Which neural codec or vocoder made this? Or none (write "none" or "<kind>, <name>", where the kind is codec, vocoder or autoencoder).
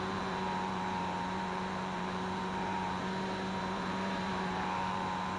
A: vocoder, BigVGAN v2